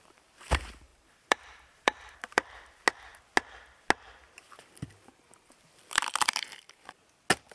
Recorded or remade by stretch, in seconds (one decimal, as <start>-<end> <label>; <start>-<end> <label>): 0.0-0.9 recorded; 0.9-2.7 remade; 2.7-7.5 recorded